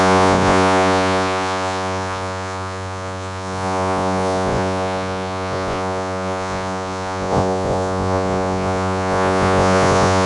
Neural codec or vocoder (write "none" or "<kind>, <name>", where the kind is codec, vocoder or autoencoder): vocoder, Vocos